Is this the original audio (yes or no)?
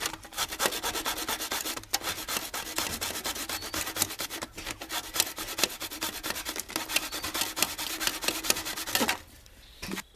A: yes